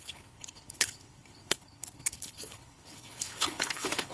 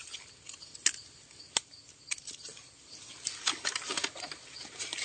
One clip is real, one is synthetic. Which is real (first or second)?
second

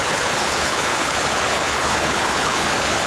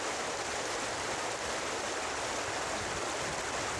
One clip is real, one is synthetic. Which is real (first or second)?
second